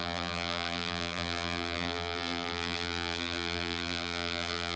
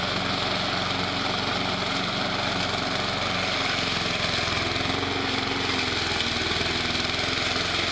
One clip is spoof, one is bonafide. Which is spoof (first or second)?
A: first